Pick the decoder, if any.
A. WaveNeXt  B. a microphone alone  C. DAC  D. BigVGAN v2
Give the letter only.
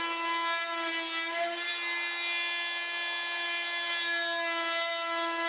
B